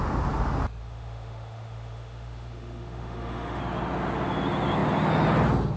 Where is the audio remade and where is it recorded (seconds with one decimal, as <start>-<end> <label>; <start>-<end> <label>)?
0.0-0.8 recorded; 0.8-3.6 remade; 3.6-5.8 recorded